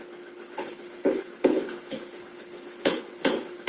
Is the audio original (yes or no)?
no